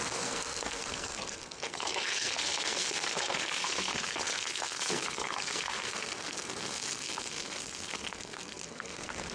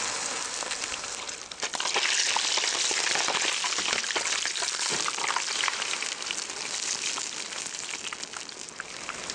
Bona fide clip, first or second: second